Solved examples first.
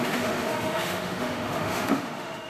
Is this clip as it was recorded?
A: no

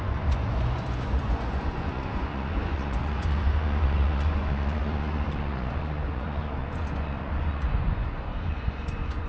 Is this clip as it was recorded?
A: no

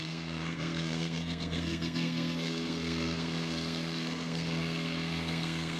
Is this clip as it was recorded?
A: no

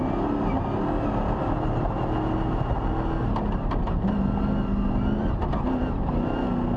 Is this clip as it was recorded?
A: yes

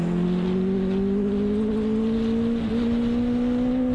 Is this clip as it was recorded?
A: yes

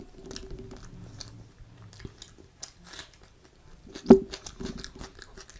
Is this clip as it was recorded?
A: yes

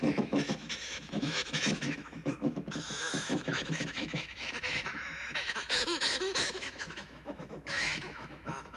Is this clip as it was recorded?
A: no